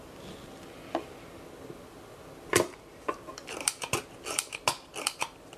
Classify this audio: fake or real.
real